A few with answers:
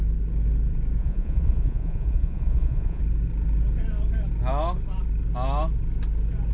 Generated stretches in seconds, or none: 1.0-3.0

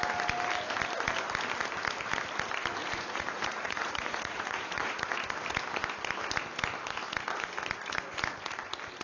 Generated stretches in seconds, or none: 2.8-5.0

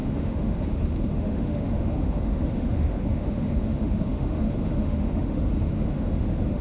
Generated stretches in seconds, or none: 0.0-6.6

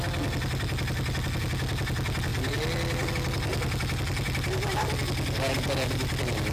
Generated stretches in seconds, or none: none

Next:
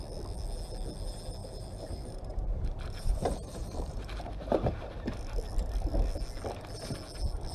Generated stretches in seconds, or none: 1.4-4.0